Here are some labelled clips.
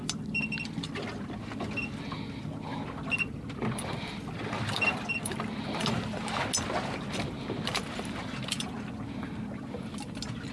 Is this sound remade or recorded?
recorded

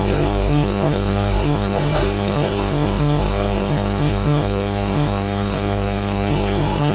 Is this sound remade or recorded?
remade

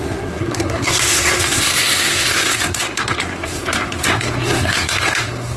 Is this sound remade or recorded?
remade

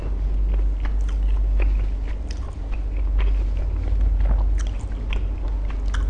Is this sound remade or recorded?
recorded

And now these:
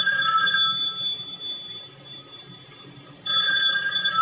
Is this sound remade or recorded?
recorded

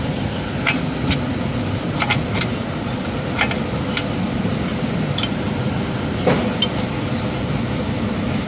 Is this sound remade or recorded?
recorded